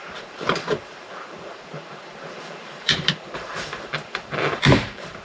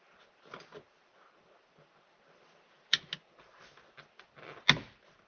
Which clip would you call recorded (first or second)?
second